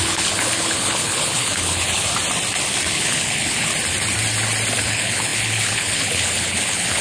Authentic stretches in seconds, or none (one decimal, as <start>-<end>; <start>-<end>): 2.1-2.9; 3.7-4.8